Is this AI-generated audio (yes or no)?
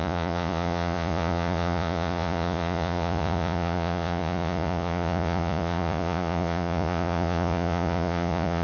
yes